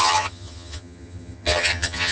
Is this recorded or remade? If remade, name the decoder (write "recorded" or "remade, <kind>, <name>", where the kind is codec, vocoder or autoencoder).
remade, vocoder, HiFi-GAN